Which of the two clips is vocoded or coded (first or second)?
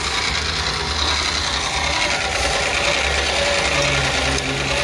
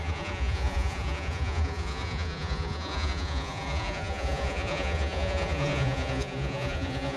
second